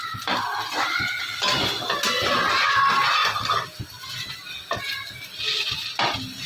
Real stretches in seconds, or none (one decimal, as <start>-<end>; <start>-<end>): 0.0-6.5